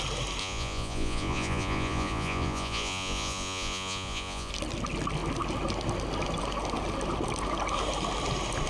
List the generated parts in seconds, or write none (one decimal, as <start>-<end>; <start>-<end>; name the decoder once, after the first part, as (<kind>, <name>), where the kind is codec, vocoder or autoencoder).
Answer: 0.4-4.5 (vocoder, Vocos)

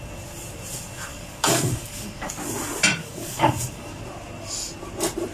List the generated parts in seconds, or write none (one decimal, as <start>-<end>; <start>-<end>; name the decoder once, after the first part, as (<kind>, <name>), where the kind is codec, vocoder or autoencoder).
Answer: 1.1-2.3 (codec, DAC); 3.0-4.0